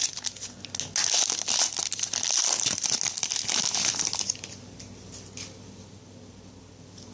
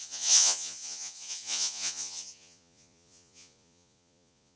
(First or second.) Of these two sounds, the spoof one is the second